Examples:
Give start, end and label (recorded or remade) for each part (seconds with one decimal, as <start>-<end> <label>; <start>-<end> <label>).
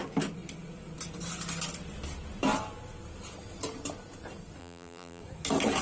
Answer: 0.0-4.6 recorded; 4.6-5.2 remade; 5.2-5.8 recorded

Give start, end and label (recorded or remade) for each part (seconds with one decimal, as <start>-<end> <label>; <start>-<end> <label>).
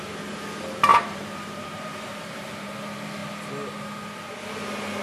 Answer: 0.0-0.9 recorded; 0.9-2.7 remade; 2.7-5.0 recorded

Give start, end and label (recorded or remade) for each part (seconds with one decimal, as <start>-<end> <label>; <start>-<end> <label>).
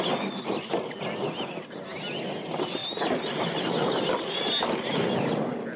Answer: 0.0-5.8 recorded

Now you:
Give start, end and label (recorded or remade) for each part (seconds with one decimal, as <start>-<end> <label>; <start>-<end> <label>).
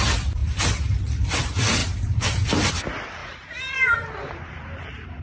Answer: 0.0-0.4 recorded; 0.4-1.0 remade; 1.0-1.8 recorded; 1.8-2.7 remade; 2.7-3.2 recorded; 3.2-5.2 remade